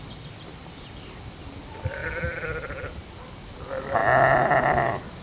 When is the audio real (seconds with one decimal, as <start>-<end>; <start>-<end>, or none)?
0.0-5.2